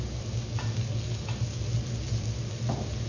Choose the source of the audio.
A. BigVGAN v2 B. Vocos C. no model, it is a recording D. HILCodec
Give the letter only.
C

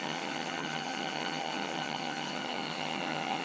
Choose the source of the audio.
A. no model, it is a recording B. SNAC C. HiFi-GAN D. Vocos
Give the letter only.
C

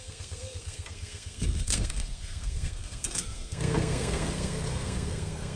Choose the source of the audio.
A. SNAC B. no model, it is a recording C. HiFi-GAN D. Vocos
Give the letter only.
A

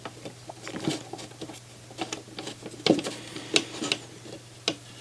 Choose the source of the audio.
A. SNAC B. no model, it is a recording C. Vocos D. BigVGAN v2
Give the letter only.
B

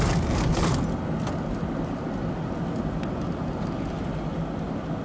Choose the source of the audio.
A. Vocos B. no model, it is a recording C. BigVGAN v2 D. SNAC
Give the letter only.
B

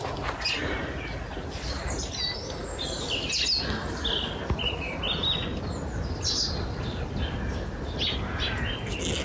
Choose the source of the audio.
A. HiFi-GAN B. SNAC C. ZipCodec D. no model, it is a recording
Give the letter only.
D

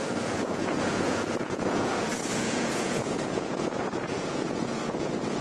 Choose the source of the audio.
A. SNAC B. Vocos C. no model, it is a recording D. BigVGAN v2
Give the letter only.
B